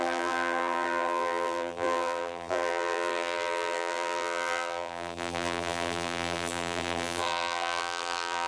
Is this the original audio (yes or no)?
no